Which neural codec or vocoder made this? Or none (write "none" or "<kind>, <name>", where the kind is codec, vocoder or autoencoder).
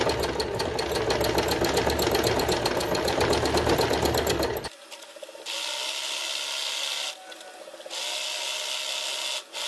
none